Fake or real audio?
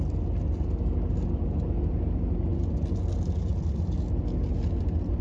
real